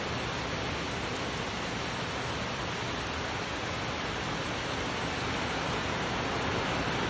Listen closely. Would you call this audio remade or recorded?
recorded